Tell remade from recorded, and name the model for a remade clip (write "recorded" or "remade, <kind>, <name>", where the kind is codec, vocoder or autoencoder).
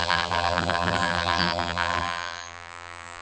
remade, vocoder, BigVGAN v2